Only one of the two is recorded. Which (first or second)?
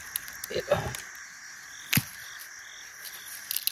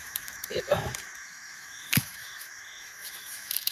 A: first